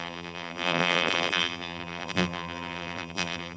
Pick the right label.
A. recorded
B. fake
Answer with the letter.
B